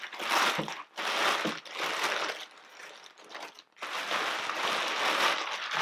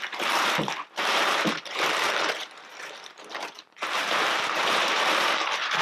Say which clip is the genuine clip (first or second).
first